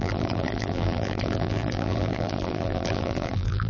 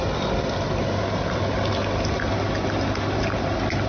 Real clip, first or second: second